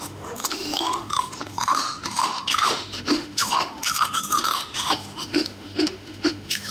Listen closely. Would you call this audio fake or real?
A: fake